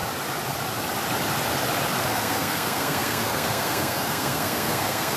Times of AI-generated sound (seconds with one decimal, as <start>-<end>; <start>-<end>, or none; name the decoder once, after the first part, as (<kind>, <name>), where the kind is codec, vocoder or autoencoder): 2.0-5.2 (codec, SNAC)